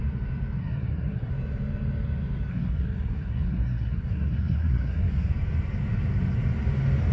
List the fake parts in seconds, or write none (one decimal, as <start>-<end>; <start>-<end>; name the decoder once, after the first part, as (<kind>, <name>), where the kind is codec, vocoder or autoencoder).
0.6-1.3 (codec, SNAC); 2.5-5.3